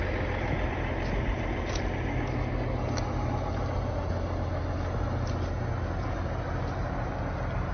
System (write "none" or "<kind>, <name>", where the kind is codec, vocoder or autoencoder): none